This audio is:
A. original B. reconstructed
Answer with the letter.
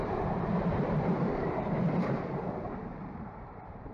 B